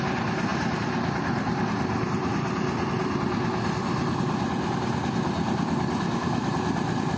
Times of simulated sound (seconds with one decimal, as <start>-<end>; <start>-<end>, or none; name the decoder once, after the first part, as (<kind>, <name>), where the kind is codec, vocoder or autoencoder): none